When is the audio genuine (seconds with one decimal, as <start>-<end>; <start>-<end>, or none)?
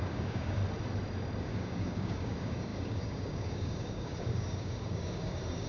0.6-1.4